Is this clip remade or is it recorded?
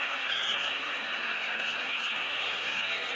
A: remade